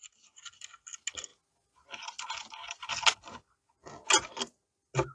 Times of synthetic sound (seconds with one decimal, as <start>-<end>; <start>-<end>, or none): none